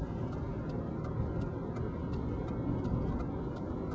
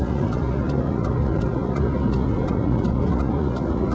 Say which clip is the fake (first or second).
second